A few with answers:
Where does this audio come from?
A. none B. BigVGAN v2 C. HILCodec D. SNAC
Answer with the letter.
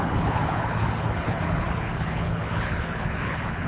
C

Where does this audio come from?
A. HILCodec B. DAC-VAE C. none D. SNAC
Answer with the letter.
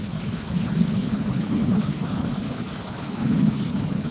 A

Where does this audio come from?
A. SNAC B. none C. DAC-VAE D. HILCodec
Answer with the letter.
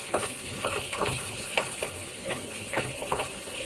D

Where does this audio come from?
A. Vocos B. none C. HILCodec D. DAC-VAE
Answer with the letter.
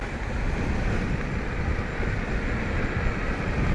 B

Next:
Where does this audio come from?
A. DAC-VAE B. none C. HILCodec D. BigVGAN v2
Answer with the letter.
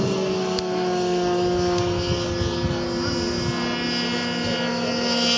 B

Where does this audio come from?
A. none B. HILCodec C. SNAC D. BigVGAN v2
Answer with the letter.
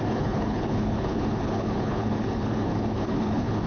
B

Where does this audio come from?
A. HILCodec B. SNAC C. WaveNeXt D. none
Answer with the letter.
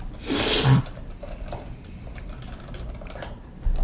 D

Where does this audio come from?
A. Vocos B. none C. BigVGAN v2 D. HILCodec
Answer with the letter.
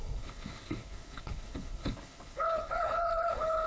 D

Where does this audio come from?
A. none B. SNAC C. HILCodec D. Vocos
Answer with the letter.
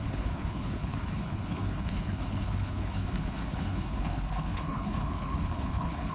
C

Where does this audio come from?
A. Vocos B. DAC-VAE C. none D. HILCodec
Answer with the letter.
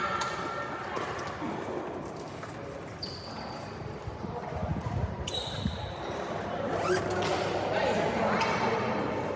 C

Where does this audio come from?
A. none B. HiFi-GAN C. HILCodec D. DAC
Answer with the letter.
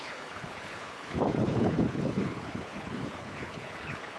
C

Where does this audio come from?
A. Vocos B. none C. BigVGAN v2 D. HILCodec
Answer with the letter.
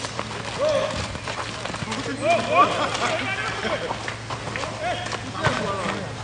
B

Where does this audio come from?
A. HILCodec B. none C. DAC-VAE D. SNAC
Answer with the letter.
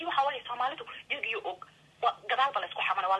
B